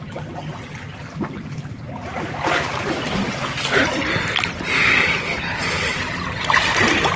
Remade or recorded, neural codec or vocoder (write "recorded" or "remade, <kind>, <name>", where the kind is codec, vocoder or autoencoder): remade, vocoder, BigVGAN v2